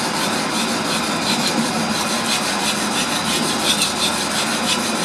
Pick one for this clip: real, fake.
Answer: real